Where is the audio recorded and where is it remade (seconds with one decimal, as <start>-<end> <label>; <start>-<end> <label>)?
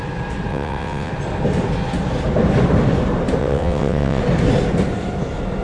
0.0-0.5 recorded; 0.5-1.1 remade; 1.1-3.4 recorded; 3.4-4.2 remade; 4.2-5.6 recorded